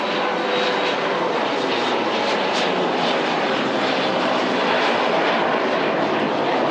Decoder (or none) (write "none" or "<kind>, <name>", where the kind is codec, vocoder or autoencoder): none